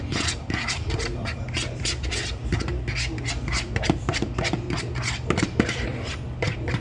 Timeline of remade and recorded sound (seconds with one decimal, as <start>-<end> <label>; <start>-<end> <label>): 0.0-2.4 remade; 2.4-3.3 recorded; 3.3-6.8 remade